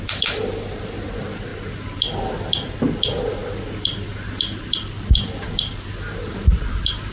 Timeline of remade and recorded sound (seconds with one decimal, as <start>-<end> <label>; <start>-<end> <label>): 0.0-7.1 recorded